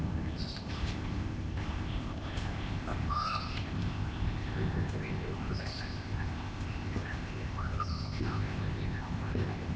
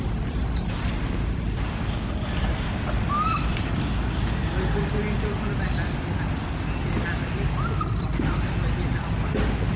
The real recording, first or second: second